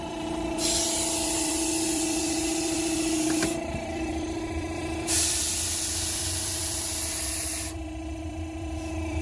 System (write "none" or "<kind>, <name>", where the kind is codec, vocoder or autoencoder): vocoder, BigVGAN v2